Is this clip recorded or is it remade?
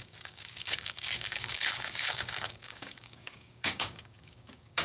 remade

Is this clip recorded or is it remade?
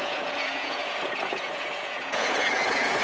remade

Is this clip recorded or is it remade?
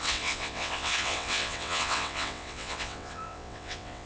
remade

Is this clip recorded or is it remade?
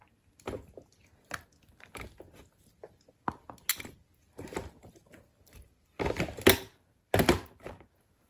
recorded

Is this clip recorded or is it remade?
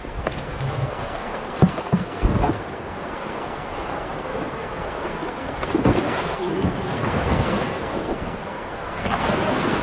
remade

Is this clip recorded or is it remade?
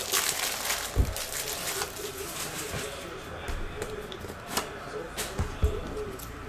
recorded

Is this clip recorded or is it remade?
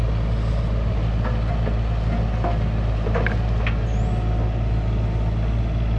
recorded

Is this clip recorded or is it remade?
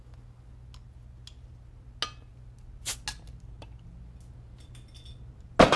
recorded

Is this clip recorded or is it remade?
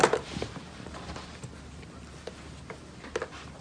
recorded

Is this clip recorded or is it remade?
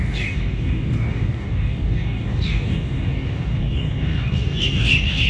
remade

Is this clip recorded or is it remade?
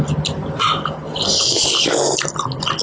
recorded